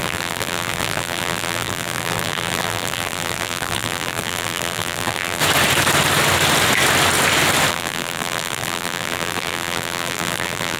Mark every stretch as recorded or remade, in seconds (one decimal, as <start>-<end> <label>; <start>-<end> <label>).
0.0-5.4 remade; 5.4-7.7 recorded; 7.7-10.8 remade